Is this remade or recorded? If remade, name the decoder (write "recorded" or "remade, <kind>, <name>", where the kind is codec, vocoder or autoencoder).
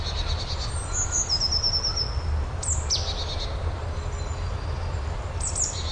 recorded